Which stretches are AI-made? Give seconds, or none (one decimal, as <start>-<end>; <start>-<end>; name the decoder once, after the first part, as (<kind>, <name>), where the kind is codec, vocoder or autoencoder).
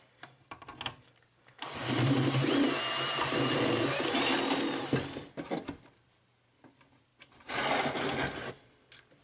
0.0-0.7 (vocoder, BigVGAN v2); 5.2-7.1; 8.5-9.2